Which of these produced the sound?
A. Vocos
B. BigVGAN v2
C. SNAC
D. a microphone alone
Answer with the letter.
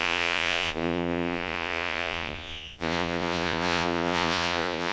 A